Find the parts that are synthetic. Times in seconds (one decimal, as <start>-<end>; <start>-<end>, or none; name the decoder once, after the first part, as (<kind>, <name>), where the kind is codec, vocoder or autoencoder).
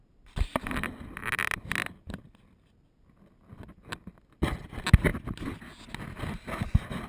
none